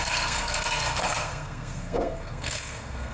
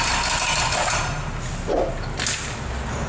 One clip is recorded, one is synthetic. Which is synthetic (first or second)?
first